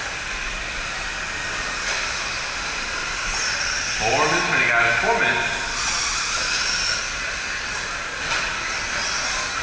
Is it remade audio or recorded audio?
recorded